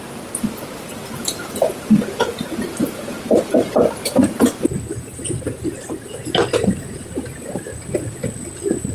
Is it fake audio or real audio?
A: real